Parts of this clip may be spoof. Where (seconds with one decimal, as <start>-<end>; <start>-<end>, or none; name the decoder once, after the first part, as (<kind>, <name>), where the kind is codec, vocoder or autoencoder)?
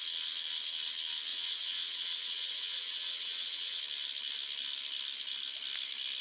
1.3-3.8 (vocoder, WaveNeXt)